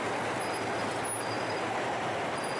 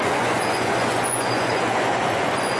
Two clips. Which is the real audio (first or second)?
first